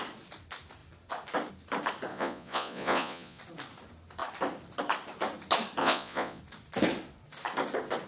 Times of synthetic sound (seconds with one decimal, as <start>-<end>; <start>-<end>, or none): 2.1-3.4; 5.8-6.4